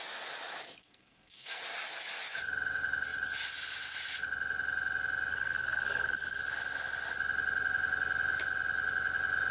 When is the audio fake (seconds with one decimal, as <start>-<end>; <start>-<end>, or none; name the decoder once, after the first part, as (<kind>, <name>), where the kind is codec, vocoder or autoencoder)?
0.8-1.6 (codec, SNAC); 5.3-6.4